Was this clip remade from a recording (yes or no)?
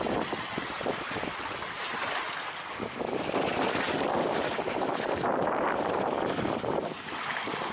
no